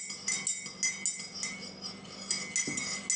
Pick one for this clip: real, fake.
real